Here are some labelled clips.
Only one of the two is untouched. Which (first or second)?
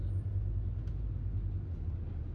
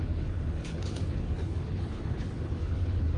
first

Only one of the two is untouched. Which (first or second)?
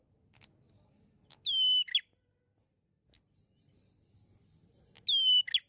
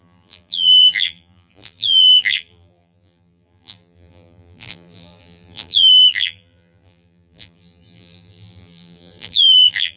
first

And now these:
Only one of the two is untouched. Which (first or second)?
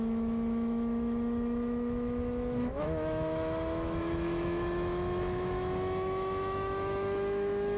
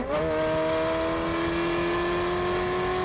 second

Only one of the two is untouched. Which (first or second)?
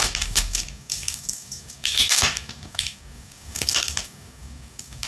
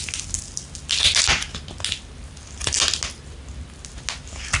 second